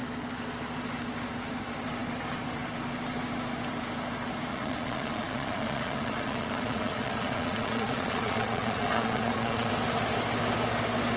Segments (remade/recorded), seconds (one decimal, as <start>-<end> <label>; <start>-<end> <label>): 0.0-4.5 recorded; 4.5-9.7 remade; 9.7-11.2 recorded